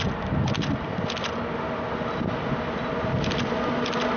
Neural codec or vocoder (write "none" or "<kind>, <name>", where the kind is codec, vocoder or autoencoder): none